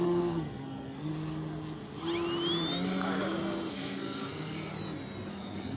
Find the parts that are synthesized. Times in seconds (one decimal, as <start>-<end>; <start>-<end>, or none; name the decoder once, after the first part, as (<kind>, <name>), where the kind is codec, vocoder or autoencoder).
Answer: 0.0-1.1 (codec, SNAC); 3.7-4.7; 5.3-5.8